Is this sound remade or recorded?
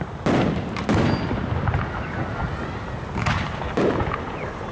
recorded